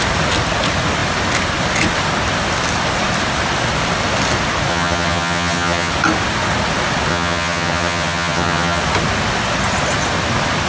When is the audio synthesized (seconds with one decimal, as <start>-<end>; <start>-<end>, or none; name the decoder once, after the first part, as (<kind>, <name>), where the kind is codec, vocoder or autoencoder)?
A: 4.7-5.9 (vocoder, HiFi-GAN); 7.1-8.8